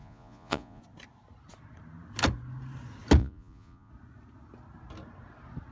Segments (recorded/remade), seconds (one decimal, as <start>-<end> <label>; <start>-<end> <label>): 0.0-0.8 remade; 0.8-3.2 recorded; 3.2-3.9 remade; 3.9-5.7 recorded